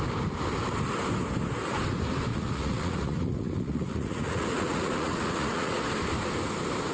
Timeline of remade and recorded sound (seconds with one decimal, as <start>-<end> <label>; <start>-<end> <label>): 0.0-2.3 recorded; 2.3-5.8 remade; 5.8-6.9 recorded